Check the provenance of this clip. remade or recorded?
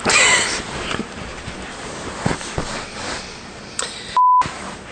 recorded